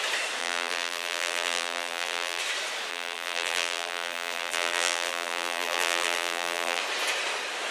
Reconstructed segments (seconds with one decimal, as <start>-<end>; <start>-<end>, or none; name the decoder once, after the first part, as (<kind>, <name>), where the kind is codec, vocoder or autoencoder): 0.4-2.4 (vocoder, BigVGAN v2); 2.9-6.8